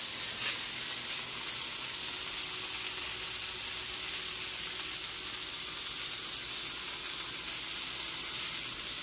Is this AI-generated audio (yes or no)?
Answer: no